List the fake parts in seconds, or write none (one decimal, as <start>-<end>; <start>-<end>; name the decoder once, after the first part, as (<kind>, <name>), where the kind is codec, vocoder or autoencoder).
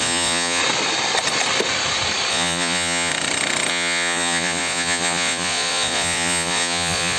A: 0.0-0.6 (vocoder, Vocos); 2.3-3.1; 3.7-7.2